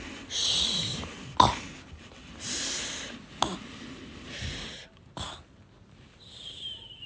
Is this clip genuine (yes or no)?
yes